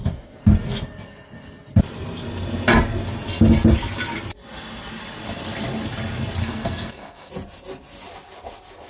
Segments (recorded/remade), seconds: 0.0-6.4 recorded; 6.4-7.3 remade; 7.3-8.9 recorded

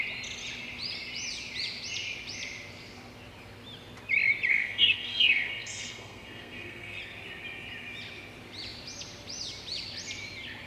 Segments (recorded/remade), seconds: 0.0-4.5 recorded; 4.5-7.0 remade; 7.0-10.7 recorded

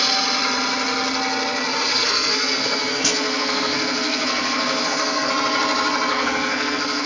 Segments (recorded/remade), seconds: 0.0-1.9 recorded; 1.9-5.3 remade; 5.3-6.1 recorded; 6.1-7.1 remade